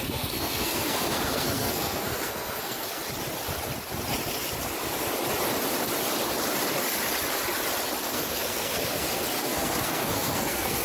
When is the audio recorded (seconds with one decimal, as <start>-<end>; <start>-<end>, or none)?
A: 3.0-8.0